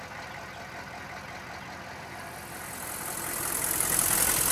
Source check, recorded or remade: recorded